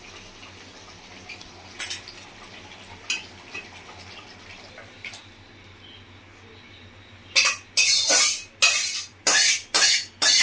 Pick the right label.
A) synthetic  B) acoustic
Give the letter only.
B